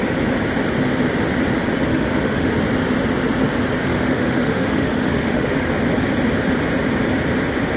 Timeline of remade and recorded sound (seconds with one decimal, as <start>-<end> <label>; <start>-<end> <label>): 0.0-1.9 recorded; 1.9-2.5 remade; 2.5-3.8 recorded; 3.8-5.7 remade; 5.7-7.8 recorded